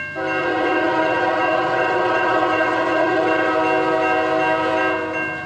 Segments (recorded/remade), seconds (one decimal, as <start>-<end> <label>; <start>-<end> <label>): 0.0-0.4 recorded; 0.4-3.5 remade; 3.5-5.5 recorded